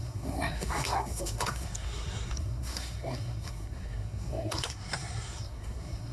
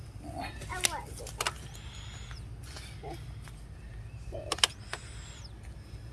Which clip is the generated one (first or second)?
first